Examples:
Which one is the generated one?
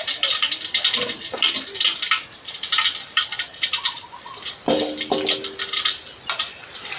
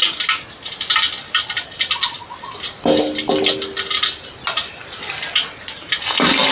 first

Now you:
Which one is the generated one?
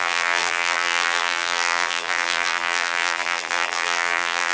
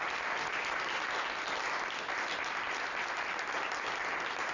first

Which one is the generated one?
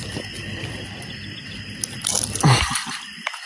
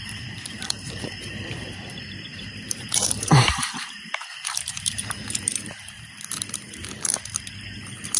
second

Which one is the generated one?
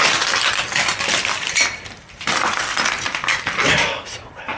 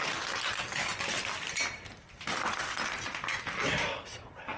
first